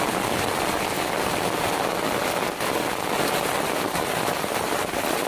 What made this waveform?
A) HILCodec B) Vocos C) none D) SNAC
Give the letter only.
C